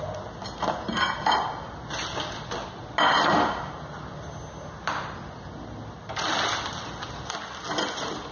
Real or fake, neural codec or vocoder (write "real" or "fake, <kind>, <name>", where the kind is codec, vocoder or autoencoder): real